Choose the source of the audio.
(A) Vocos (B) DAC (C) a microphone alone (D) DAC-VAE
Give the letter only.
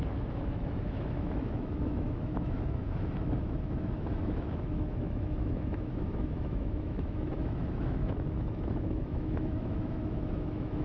D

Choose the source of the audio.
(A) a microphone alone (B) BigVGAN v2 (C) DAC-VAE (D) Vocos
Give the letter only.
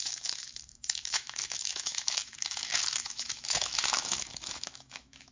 C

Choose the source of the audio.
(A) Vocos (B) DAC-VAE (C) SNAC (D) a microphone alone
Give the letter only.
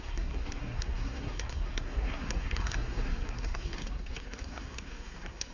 C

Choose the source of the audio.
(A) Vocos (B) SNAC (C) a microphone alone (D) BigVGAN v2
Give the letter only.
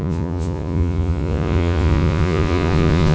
A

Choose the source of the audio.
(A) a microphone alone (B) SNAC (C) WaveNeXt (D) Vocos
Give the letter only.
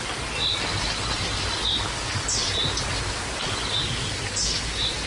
A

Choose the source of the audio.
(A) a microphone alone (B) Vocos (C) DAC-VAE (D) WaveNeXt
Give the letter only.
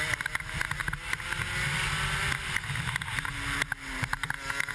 A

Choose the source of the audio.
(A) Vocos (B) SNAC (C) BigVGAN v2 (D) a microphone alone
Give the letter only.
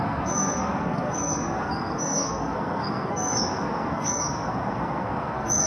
B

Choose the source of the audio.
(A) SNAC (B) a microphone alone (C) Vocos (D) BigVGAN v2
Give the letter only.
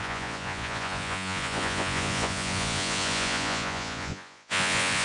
C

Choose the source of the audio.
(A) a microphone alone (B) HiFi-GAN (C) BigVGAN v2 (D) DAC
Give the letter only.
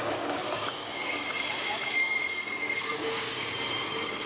D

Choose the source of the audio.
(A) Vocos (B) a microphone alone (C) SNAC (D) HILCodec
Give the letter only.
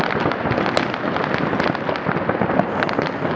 B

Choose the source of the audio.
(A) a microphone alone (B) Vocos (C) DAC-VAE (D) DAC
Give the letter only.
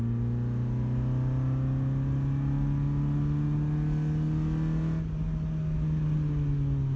A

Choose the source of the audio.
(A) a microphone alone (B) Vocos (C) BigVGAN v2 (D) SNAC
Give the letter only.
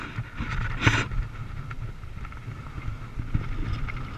A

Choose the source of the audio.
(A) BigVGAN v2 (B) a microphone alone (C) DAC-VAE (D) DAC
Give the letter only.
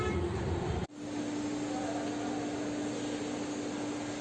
B